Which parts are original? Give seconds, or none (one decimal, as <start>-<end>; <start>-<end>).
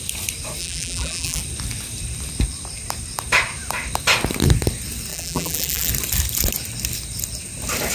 0.0-0.6; 1.4-5.1; 5.9-7.9